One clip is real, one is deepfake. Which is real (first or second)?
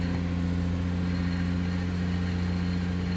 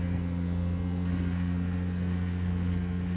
first